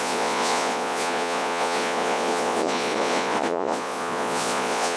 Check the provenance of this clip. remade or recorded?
remade